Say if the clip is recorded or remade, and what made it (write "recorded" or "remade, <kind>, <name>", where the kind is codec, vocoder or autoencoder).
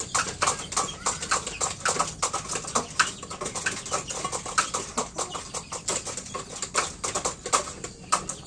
recorded